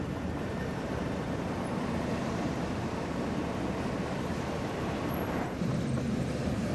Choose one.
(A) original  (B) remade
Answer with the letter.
B